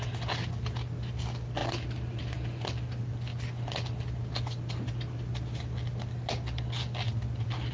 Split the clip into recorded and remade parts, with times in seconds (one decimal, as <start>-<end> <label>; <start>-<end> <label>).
0.0-7.7 recorded